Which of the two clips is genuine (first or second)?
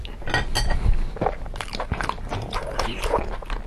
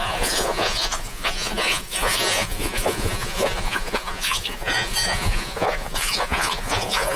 first